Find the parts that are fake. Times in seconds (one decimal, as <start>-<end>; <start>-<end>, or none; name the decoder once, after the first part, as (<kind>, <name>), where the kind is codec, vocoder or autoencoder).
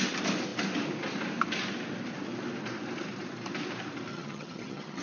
4.1-5.0 (vocoder, HiFi-GAN)